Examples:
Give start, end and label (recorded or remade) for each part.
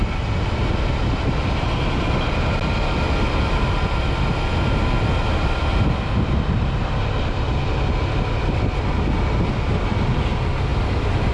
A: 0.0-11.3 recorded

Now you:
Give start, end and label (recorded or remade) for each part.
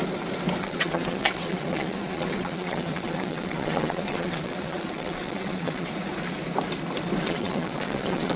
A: 0.0-0.6 recorded; 0.6-5.9 remade; 5.9-7.2 recorded; 7.2-8.4 remade